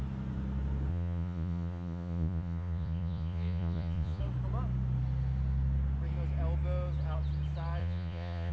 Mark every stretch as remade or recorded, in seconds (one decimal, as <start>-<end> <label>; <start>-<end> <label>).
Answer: 0.0-0.9 recorded; 0.9-4.2 remade; 4.2-7.8 recorded; 7.8-8.5 remade